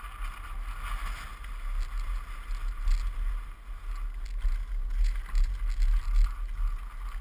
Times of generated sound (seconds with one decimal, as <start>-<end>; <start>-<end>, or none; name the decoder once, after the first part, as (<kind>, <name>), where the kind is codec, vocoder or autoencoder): none

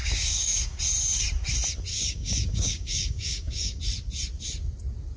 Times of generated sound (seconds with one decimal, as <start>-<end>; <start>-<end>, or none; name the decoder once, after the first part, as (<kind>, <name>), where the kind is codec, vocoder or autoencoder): 0.0-0.8 (codec, DAC); 1.9-3.8

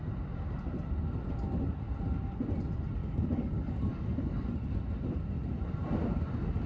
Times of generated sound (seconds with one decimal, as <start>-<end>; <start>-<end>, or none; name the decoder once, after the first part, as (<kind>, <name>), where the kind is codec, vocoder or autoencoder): 3.0-4.8 (codec, DAC)

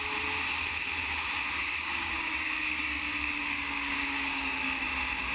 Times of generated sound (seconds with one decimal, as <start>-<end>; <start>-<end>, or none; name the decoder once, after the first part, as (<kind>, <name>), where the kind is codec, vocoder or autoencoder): 1.6-4.8 (codec, DAC)